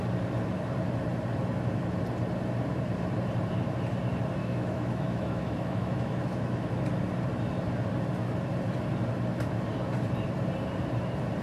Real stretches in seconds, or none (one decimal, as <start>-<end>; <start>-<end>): 0.0-4.4; 6.8-11.4